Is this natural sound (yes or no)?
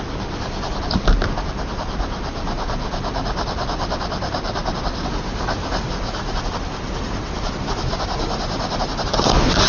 yes